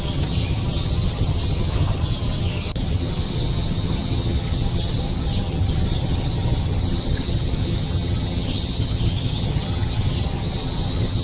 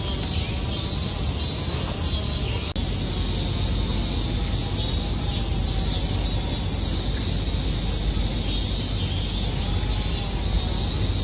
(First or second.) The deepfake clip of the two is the first